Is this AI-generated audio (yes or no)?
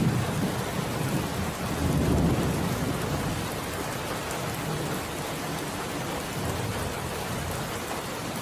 no